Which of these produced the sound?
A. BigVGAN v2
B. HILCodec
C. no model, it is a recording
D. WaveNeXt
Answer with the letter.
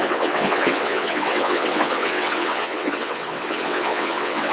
D